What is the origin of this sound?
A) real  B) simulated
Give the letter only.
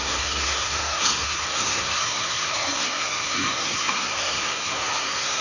B